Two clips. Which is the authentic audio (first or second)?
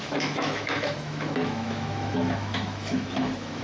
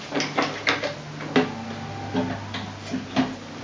second